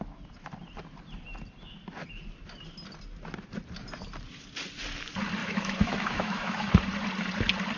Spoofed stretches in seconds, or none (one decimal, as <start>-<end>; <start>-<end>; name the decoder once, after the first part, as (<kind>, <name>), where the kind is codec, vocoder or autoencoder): 5.4-6.7 (autoencoder, DAC-VAE)